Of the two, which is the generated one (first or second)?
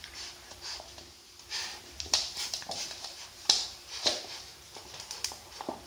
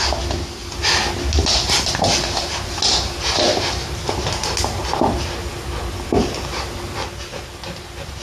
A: first